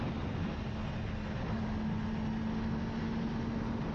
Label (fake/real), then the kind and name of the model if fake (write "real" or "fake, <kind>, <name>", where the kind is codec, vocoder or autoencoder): real